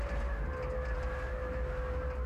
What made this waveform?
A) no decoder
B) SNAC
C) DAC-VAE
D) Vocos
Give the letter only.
A